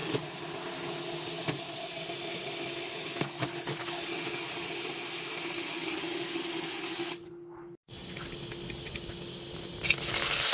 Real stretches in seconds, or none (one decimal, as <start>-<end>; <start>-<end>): 0.0-10.5